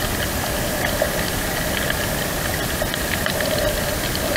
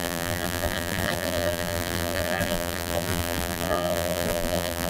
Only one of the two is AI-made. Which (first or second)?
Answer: second